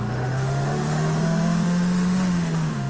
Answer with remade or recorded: remade